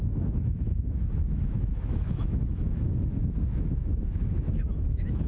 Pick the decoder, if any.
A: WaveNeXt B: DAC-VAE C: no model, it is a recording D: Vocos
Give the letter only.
B